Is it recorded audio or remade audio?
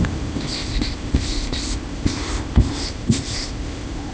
remade